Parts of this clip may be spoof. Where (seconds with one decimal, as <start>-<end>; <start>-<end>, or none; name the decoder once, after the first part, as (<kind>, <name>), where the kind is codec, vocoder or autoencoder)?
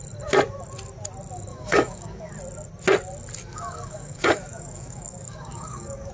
1.5-2.3 (codec, DAC); 3.4-6.1